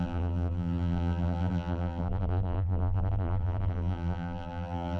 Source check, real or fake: fake